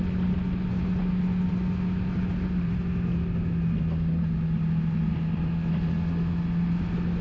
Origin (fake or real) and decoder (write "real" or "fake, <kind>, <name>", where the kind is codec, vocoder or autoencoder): real